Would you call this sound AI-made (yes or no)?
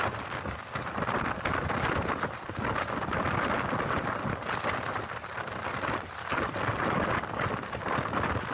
no